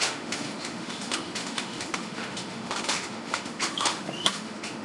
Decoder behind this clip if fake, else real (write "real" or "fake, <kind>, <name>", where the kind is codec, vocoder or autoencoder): fake, autoencoder, DAC-VAE